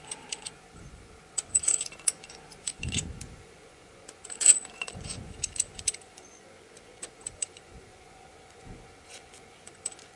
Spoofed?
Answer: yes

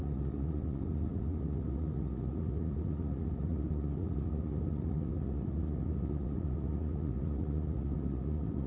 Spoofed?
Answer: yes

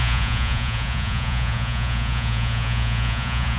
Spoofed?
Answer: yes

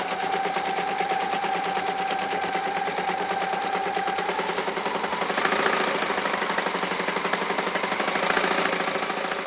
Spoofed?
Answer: no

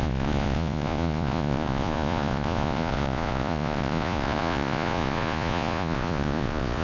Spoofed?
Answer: yes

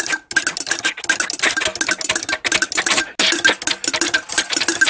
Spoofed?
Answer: no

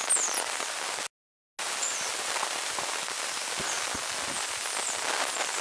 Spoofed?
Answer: no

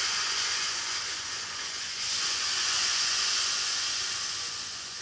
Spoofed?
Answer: yes